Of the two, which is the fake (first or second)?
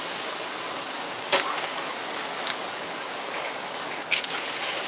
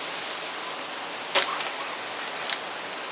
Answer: first